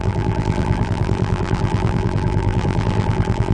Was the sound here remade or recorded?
remade